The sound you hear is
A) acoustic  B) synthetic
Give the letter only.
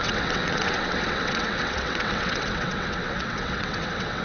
B